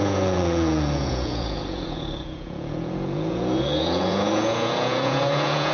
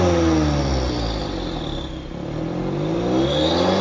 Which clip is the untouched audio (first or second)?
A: second